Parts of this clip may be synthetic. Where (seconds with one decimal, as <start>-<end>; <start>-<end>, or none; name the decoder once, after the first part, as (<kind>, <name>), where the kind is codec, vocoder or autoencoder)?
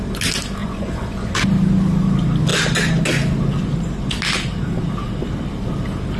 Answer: 0.6-1.3 (vocoder, Vocos)